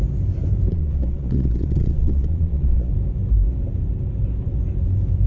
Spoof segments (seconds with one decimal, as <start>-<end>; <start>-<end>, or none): 0.7-2.9